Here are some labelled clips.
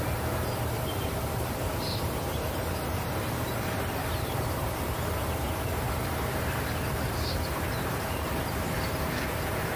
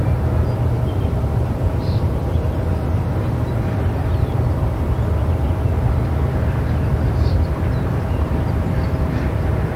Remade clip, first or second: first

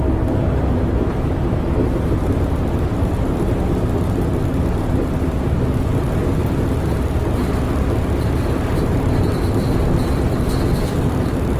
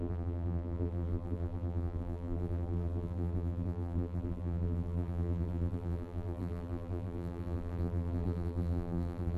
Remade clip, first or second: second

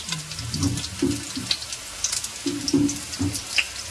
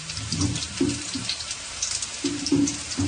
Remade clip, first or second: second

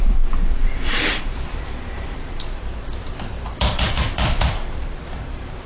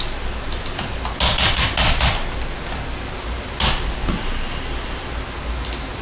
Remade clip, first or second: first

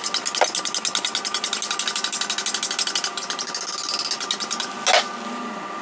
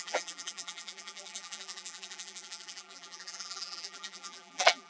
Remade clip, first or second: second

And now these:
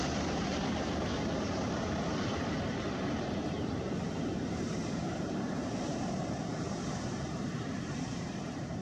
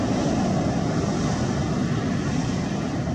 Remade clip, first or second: first